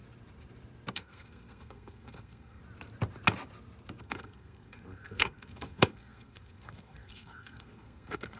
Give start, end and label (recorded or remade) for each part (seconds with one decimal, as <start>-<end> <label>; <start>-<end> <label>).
0.0-0.9 recorded; 0.9-2.6 remade; 2.6-4.0 recorded; 4.0-8.4 remade